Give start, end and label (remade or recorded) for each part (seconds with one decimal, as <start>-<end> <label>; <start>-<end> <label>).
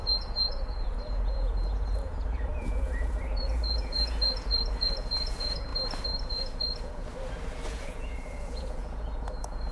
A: 0.0-5.7 remade; 5.7-6.2 recorded; 6.2-7.1 remade; 7.1-7.7 recorded; 7.7-9.7 remade